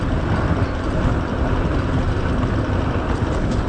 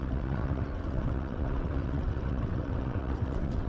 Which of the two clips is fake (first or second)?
second